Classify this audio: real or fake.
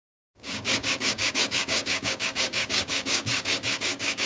fake